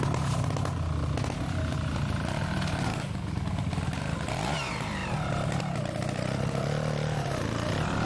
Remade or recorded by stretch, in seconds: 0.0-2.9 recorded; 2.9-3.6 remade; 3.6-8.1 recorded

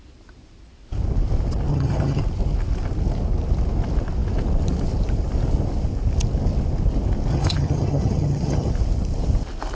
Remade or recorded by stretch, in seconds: 0.0-1.7 recorded; 1.7-2.2 remade; 2.2-7.3 recorded; 7.3-8.7 remade; 8.7-9.7 recorded

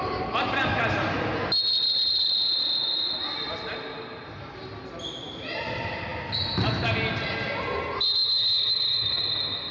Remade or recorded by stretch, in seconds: 0.0-9.7 recorded

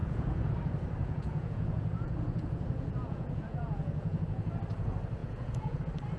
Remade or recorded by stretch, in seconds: 0.0-0.5 remade; 0.5-1.0 recorded; 1.0-4.5 remade; 4.5-5.2 recorded; 5.2-5.8 remade; 5.8-6.2 recorded

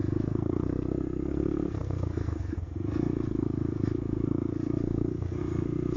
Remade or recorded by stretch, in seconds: 0.0-6.0 remade

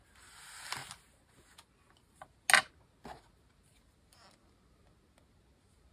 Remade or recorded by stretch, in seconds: 0.0-5.9 recorded

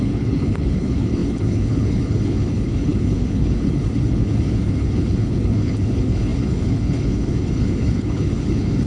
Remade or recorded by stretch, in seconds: 0.0-8.9 remade

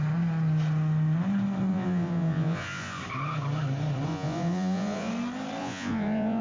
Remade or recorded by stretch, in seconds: 0.0-1.7 recorded; 1.7-3.0 remade; 3.0-4.1 recorded; 4.1-5.1 remade; 5.1-5.6 recorded; 5.6-6.4 remade